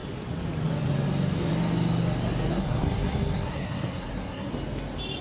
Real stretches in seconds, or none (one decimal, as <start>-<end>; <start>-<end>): 0.0-2.5; 4.5-5.2